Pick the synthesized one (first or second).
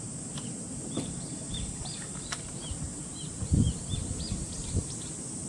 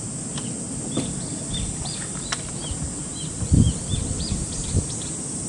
first